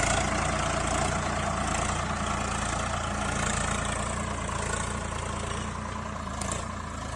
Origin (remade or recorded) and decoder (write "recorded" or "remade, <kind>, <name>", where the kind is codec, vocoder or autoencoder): recorded